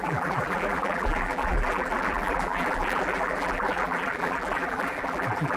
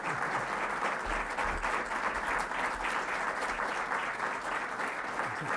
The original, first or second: second